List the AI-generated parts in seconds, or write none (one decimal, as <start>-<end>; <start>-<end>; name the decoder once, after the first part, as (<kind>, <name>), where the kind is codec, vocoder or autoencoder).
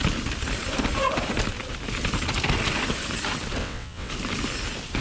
3.6-4.1 (vocoder, WaveNeXt)